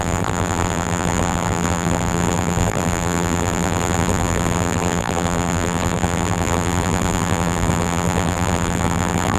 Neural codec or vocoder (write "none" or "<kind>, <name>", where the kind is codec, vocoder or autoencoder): vocoder, BigVGAN v2